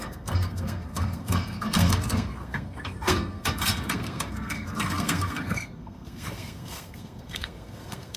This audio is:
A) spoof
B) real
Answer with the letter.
A